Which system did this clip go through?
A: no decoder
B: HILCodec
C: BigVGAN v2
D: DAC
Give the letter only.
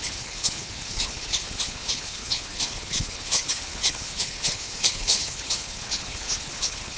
B